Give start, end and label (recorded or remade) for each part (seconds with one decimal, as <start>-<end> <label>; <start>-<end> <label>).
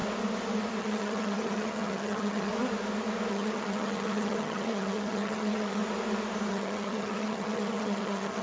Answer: 0.0-0.8 recorded; 0.8-2.5 remade; 2.5-3.3 recorded; 3.3-5.8 remade; 5.8-6.5 recorded; 6.5-8.4 remade